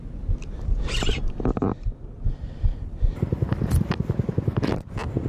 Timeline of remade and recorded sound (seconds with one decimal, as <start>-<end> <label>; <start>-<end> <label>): 0.0-5.3 recorded

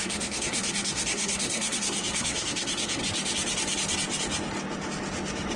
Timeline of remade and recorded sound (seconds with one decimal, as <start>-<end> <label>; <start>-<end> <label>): 0.0-3.0 remade; 3.0-5.6 recorded

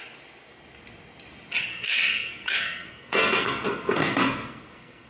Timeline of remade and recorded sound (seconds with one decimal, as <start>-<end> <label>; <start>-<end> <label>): 0.0-1.7 recorded; 1.7-5.1 remade

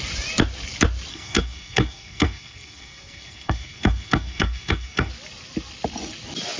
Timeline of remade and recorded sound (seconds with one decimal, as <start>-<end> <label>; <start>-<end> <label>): 0.0-1.1 recorded; 1.1-5.1 remade; 5.1-6.6 recorded